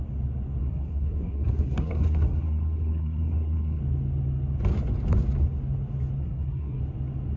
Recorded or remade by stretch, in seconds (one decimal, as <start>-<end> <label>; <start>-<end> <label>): 0.0-0.6 recorded; 0.6-3.8 remade; 3.8-6.2 recorded; 6.2-6.8 remade; 6.8-7.4 recorded